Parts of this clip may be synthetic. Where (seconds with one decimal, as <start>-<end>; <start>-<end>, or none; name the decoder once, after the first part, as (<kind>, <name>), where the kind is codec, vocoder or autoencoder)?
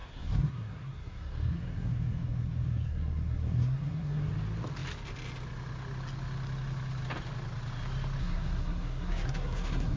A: 0.0-4.3 (codec, SNAC); 8.2-10.0